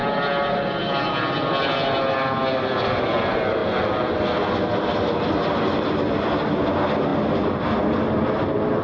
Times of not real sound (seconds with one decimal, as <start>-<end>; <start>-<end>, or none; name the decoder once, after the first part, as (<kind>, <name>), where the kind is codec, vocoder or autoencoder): 0.0-1.1 (vocoder, BigVGAN v2)